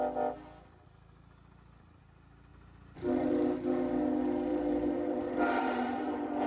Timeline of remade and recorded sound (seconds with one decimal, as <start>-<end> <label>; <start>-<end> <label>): 0.0-2.5 recorded; 2.5-3.3 remade; 3.3-4.5 recorded; 4.5-6.5 remade